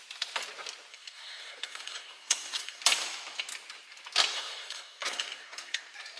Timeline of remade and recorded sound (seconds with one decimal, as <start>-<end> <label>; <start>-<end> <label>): 0.0-0.9 recorded; 0.9-2.8 remade; 2.8-4.3 recorded; 4.3-5.8 remade; 5.8-6.2 recorded